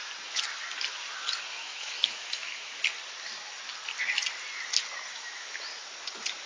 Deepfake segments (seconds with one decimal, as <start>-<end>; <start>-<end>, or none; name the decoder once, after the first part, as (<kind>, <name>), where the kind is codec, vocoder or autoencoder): 1.6-2.8 (autoencoder, DAC-VAE); 5.1-5.6

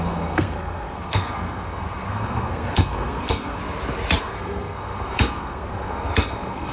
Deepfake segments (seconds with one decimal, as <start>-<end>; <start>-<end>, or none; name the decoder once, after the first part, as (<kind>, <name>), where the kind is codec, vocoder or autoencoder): 0.0-3.6 (codec, SNAC); 4.2-6.7

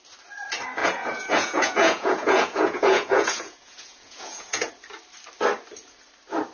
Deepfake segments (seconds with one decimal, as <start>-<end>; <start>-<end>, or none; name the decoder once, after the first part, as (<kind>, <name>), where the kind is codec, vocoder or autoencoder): 0.8-4.7 (vocoder, Vocos)

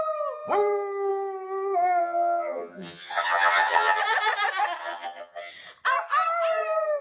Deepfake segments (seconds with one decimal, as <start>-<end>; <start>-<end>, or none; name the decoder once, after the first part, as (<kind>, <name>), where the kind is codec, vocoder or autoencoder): 2.0-4.0 (vocoder, HiFi-GAN); 4.8-5.5

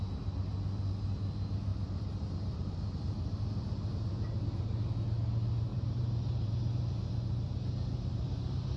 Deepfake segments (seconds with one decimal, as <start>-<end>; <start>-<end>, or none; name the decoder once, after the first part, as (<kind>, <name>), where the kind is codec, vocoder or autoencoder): 1.7-2.8 (vocoder, BigVGAN v2); 5.7-8.8

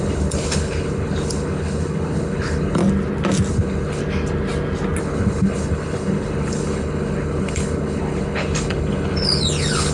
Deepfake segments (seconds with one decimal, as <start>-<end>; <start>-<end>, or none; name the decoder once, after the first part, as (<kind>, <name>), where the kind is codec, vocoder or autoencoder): 0.0-2.8 (codec, HILCodec); 3.5-4.0; 5.0-9.9

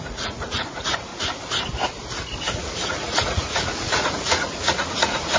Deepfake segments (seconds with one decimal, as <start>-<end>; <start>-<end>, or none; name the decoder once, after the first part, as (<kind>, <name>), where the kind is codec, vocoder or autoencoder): 0.0-1.1 (vocoder, Vocos); 2.4-5.4

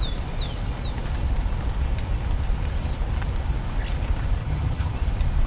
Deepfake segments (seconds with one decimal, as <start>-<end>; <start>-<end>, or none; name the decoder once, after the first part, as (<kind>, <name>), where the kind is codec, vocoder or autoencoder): 4.4-4.9 (vocoder, HiFi-GAN)